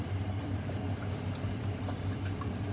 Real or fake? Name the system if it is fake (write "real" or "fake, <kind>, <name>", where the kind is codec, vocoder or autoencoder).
fake, vocoder, BigVGAN v2